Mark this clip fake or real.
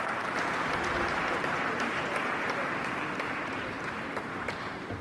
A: fake